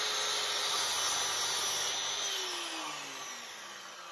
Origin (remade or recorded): recorded